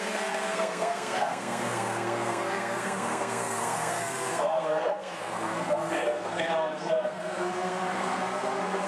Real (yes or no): no